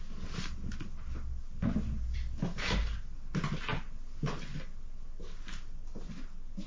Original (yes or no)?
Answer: yes